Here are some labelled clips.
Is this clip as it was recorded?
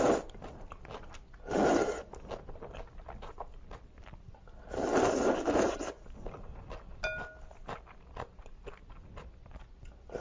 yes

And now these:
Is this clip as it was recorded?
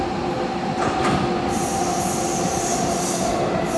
yes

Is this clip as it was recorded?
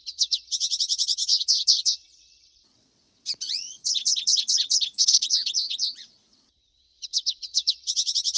no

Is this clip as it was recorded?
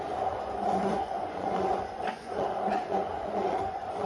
no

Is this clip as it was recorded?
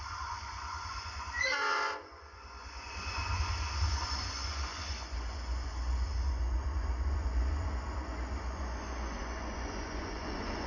no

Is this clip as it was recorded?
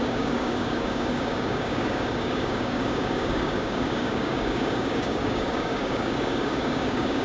no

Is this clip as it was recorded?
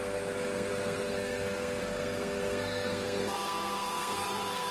no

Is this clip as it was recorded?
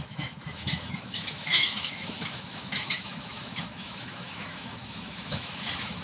no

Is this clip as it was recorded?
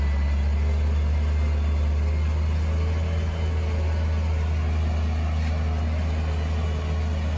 yes